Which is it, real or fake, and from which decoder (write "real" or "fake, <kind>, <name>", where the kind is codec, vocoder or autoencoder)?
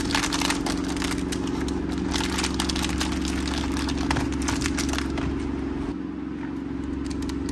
real